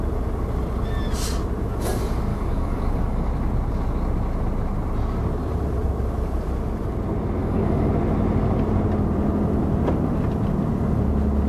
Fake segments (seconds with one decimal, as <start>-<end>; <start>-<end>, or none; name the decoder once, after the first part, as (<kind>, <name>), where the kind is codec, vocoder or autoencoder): 2.3-3.3 (codec, DAC); 7.4-7.9

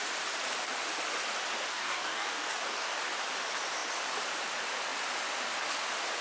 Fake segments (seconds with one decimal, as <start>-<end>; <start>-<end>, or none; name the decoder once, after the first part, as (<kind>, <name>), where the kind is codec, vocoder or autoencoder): 1.7-3.0 (codec, DAC)

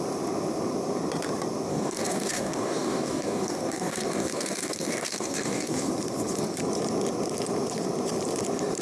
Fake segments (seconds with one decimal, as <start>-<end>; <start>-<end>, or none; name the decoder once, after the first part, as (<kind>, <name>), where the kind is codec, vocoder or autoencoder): 1.7-5.9 (codec, DAC)

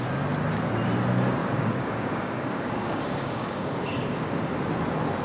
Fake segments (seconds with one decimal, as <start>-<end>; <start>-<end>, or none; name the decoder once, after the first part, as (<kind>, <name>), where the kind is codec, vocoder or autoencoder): 1.4-4.5 (codec, DAC)

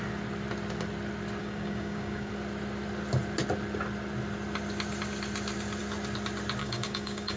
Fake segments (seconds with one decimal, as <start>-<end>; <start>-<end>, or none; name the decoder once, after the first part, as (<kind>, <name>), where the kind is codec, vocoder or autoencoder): 1.4-2.3 (codec, DAC); 6.6-7.4